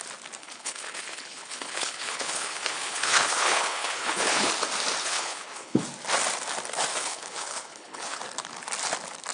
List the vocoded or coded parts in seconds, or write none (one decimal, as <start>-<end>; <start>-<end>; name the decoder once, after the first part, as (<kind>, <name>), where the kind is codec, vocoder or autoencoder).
0.4-4.5 (codec, HILCodec); 5.0-5.8; 6.9-8.2